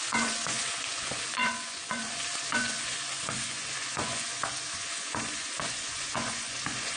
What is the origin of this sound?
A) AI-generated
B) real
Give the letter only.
A